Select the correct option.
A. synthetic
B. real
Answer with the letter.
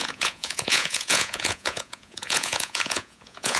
A